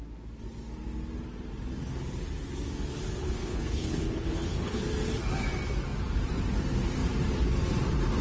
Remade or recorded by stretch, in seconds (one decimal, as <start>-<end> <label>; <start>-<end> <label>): 0.0-3.2 recorded; 3.2-4.8 remade; 4.8-8.2 recorded